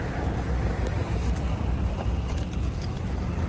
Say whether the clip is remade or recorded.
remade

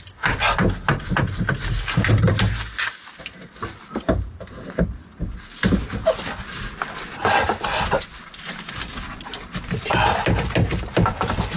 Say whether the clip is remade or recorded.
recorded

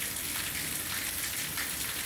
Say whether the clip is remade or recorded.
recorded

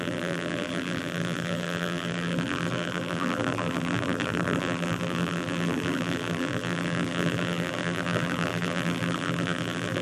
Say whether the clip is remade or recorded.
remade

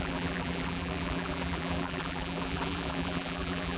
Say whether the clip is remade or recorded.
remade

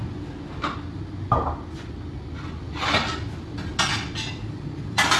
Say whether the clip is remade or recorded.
recorded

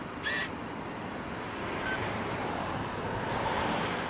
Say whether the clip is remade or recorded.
remade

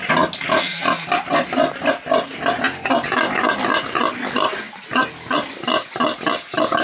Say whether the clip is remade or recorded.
recorded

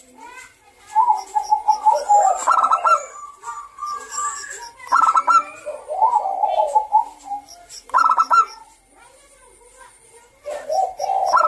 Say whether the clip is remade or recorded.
recorded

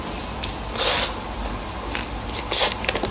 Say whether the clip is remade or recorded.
recorded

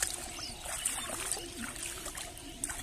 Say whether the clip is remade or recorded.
recorded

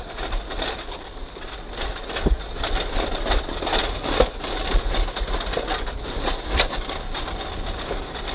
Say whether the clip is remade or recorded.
recorded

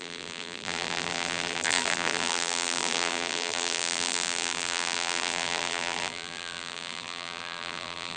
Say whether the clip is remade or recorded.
remade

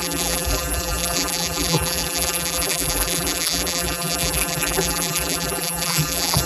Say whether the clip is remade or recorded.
remade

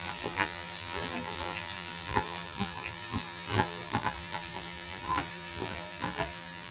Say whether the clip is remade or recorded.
remade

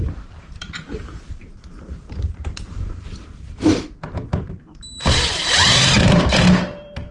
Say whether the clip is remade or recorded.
remade